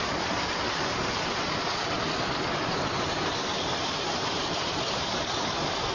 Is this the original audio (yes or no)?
no